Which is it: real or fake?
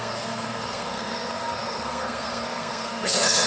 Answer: fake